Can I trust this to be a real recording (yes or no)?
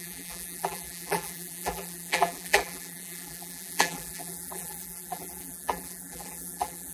no